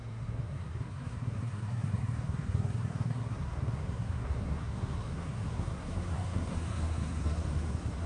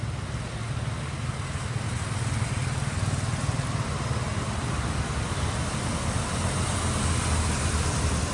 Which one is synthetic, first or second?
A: first